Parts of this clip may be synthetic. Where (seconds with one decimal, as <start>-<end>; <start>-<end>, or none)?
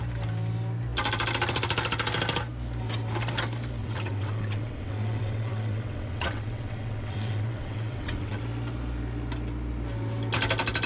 3.8-8.4